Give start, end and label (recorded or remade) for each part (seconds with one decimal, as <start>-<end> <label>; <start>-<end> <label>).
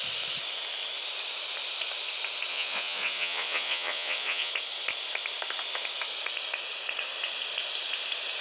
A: 0.0-2.5 recorded; 2.5-4.5 remade; 4.5-8.4 recorded